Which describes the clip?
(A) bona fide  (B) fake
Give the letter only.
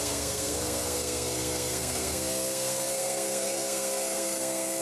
B